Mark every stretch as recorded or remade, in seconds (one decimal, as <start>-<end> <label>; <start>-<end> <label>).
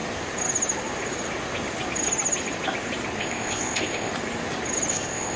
0.0-3.2 recorded; 3.2-4.1 remade; 4.1-4.9 recorded; 4.9-5.4 remade